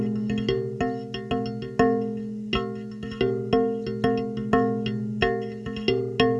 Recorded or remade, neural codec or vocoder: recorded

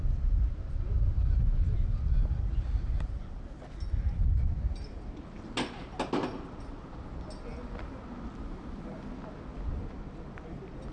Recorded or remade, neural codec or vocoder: recorded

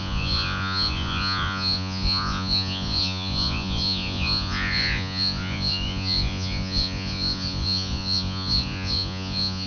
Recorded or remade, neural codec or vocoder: remade, vocoder, Vocos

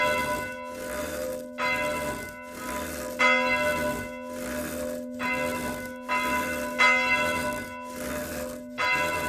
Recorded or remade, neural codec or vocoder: recorded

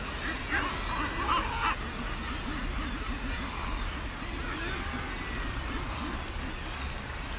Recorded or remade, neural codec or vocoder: recorded